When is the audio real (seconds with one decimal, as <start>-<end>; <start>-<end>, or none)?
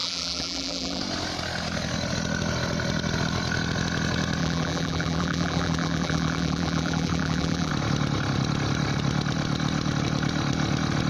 1.0-4.4; 7.7-11.1